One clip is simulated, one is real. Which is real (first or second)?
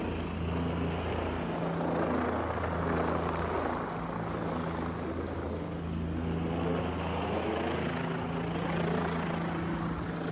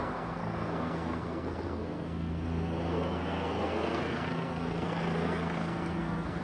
first